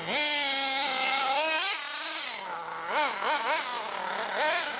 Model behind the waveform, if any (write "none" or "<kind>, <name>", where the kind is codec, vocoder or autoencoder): none